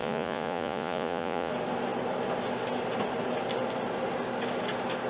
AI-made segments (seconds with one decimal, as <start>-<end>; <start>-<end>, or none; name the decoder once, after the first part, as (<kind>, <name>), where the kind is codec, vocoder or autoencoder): 0.0-1.5 (vocoder, Vocos)